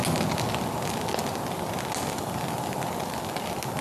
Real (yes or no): yes